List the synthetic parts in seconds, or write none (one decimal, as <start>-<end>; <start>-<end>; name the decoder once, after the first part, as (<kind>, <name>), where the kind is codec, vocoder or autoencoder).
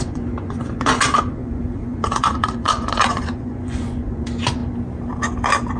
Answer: 0.0-4.6 (vocoder, Vocos)